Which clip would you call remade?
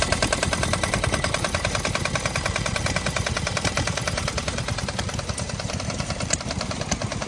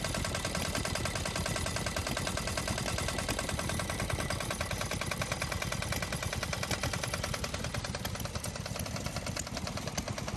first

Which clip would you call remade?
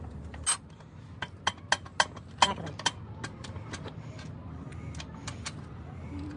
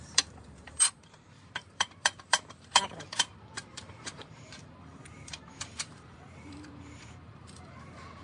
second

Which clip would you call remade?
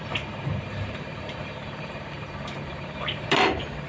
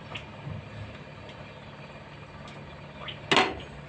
first